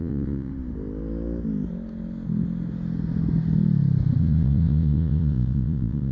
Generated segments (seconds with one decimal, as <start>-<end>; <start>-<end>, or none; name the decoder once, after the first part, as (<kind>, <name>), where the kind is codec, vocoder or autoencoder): 0.0-0.5 (vocoder, Vocos); 4.2-6.1